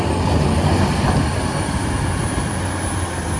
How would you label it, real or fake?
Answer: real